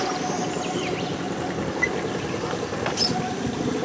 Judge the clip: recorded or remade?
remade